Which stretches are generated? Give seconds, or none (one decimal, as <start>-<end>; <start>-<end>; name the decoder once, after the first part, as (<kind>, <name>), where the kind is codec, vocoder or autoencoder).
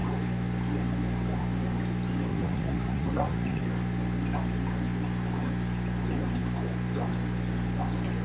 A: 2.3-3.6 (vocoder, Vocos)